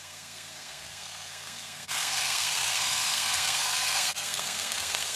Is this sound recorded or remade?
remade